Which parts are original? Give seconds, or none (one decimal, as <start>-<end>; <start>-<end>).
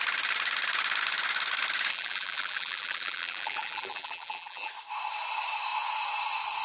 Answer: 0.0-1.9; 4.7-6.6